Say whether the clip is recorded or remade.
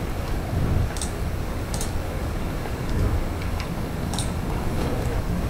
remade